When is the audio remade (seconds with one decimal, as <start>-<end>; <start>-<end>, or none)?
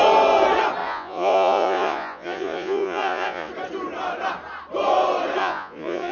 0.8-3.5; 5.4-6.1